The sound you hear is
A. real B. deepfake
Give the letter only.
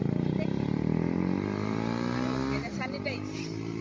A